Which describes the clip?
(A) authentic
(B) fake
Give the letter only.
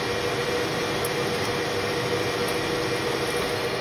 A